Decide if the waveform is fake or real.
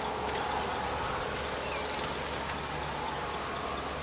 real